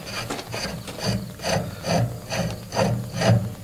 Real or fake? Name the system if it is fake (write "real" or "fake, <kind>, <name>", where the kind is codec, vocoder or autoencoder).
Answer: real